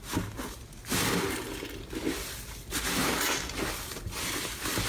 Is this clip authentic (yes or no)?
yes